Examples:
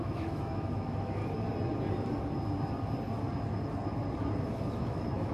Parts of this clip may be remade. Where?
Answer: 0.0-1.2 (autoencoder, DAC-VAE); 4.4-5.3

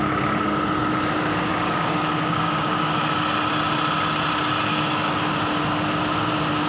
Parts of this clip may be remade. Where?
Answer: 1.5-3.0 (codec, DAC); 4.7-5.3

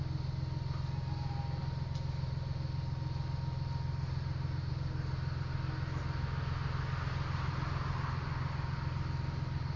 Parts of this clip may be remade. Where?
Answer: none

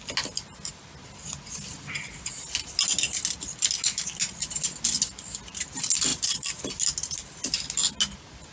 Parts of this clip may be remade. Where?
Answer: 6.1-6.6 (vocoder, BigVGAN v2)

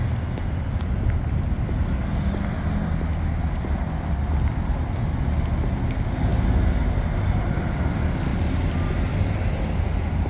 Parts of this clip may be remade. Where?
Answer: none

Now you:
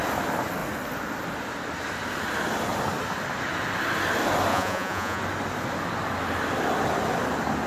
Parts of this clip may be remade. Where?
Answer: 4.5-5.2 (vocoder, Vocos)

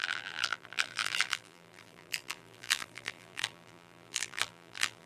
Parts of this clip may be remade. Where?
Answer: 0.0-5.1 (vocoder, BigVGAN v2)

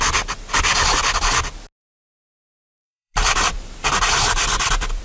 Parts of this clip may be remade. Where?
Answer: 1.8-5.0 (vocoder, BigVGAN v2)